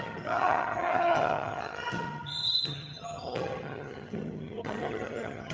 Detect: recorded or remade remade